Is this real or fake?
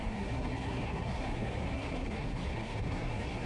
fake